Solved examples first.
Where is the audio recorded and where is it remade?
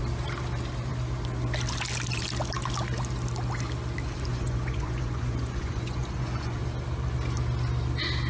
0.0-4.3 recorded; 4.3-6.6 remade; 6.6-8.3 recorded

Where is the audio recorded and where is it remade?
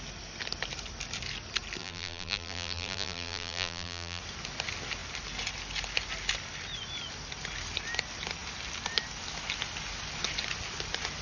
0.0-1.8 recorded; 1.8-4.2 remade; 4.2-11.2 recorded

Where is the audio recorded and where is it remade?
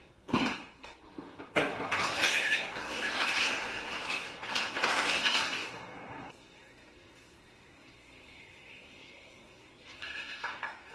0.0-10.9 remade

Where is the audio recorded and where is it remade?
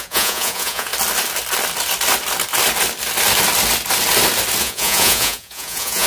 0.0-0.9 remade; 0.9-4.6 recorded; 4.6-6.1 remade